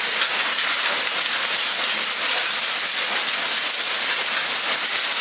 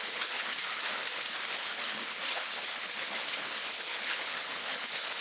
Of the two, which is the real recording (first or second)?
first